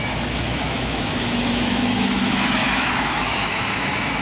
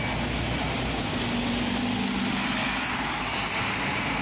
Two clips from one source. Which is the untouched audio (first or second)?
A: second